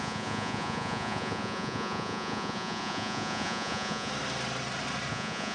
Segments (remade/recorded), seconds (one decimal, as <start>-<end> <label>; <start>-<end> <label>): 0.0-4.1 remade; 4.1-5.1 recorded; 5.1-5.5 remade